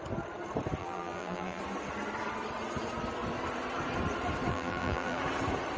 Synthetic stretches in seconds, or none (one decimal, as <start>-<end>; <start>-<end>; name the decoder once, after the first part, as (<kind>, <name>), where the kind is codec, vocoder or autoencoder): 0.8-1.6 (vocoder, BigVGAN v2); 4.5-5.2